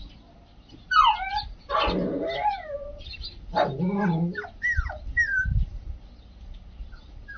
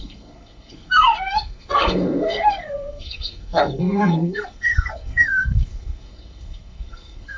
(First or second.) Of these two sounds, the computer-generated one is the second